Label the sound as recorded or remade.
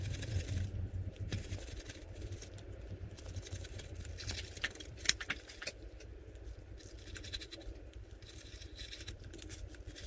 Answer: remade